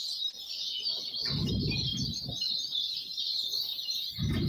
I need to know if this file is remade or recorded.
recorded